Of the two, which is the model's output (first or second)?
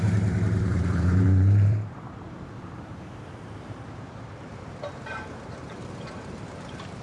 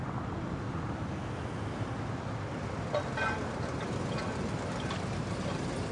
first